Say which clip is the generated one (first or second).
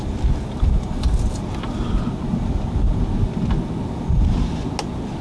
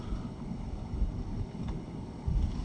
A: second